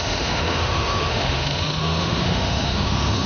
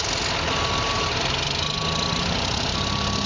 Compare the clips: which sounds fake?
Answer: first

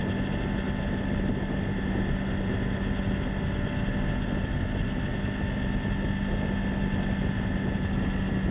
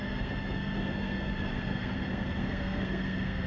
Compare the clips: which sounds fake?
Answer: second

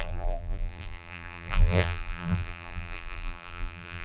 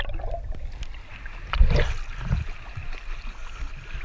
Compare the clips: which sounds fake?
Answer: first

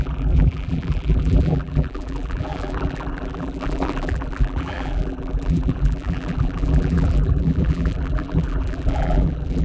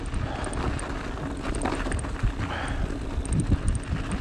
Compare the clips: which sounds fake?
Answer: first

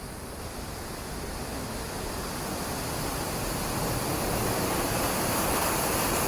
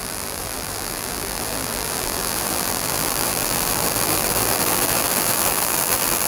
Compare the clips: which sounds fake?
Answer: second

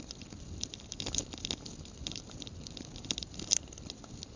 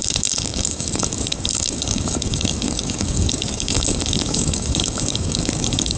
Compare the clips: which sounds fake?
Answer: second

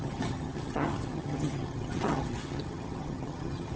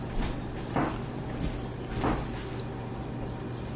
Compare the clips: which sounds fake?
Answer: first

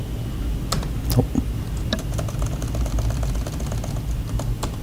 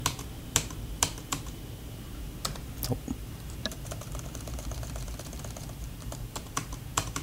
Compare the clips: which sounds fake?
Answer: second